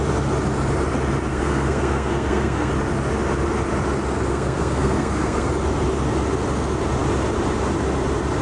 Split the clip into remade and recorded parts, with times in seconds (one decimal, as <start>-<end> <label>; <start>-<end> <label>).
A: 0.0-1.3 recorded; 1.3-2.7 remade; 2.7-4.3 recorded; 4.3-5.5 remade; 5.5-8.4 recorded